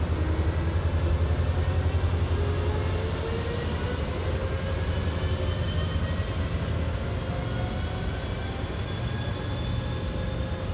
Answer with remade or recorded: recorded